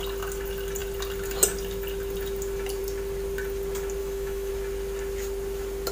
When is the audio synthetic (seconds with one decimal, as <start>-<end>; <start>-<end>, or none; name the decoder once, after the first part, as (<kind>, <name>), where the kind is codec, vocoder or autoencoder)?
4.0-4.5 (autoencoder, DAC-VAE)